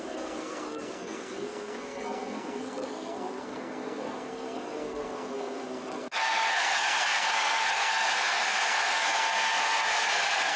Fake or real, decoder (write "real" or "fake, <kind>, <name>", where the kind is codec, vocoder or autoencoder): fake, codec, SNAC